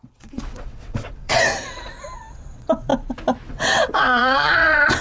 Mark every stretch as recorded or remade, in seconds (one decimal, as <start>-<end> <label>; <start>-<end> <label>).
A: 0.0-1.5 remade; 1.5-2.3 recorded; 2.3-2.9 remade; 2.9-3.5 recorded; 3.5-5.0 remade